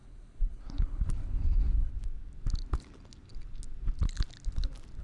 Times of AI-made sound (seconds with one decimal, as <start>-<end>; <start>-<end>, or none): 0.0-1.9